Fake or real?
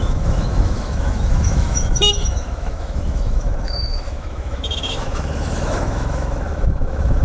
fake